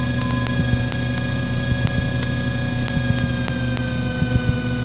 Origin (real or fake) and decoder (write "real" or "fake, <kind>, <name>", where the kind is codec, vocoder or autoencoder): real